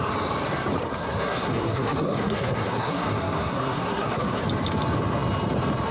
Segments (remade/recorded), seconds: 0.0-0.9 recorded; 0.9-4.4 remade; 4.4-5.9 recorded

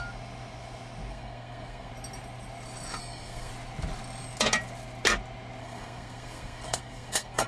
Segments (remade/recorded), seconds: 0.0-1.1 recorded; 1.1-1.9 remade; 1.9-3.0 recorded; 3.0-3.5 remade; 3.5-5.6 recorded; 5.6-7.5 remade

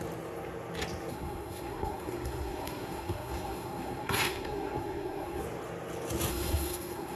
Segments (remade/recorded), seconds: 0.0-1.1 recorded; 1.1-5.4 remade; 5.4-6.3 recorded; 6.3-7.2 remade

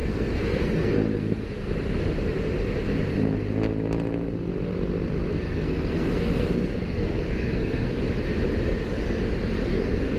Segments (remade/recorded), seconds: 0.0-1.7 remade; 1.7-5.3 recorded; 5.3-8.0 remade; 8.0-9.7 recorded; 9.7-10.2 remade

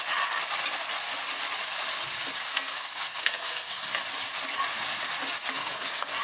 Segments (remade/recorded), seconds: 0.0-2.5 recorded; 2.5-3.8 remade; 3.8-5.5 recorded; 5.5-6.2 remade

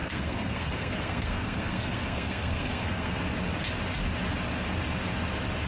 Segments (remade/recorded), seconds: 0.0-3.2 remade; 3.2-5.7 recorded